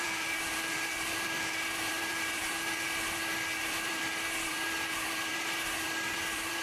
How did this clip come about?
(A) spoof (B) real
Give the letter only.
A